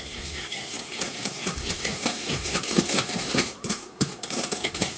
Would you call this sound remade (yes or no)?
yes